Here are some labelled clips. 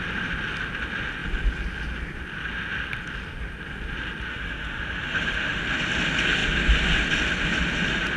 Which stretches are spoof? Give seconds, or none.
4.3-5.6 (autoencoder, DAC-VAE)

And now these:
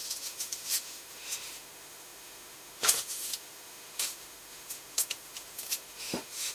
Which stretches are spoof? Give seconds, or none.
0.0-6.5 (autoencoder, DAC-VAE)